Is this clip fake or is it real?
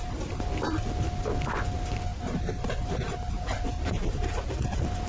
real